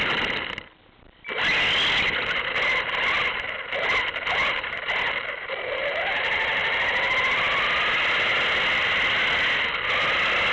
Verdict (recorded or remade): recorded